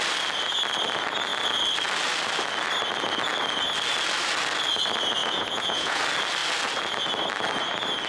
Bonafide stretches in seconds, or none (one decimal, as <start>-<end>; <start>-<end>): 0.0-5.2; 6.0-8.1